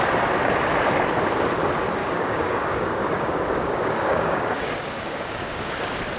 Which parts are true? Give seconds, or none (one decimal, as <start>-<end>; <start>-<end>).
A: 0.0-2.0; 5.7-6.2